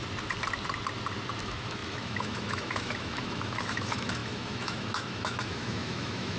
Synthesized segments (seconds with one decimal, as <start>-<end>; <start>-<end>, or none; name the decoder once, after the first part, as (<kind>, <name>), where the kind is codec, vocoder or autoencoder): 1.4-6.4 (autoencoder, DAC-VAE)